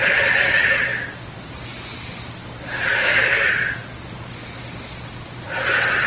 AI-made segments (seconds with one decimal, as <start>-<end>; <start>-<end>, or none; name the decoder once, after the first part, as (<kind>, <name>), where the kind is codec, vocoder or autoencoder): 2.9-3.5 (codec, DAC)